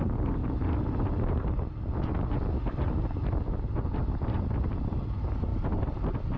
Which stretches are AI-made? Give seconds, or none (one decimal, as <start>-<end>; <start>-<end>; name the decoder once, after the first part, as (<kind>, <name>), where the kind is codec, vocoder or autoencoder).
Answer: none